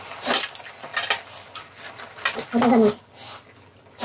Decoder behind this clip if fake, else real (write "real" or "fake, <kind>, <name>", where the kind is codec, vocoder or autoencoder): real